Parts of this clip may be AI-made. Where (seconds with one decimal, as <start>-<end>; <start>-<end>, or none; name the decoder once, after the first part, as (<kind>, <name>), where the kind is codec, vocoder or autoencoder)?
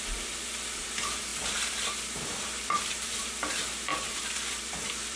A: 1.3-3.3 (vocoder, BigVGAN v2); 3.9-5.2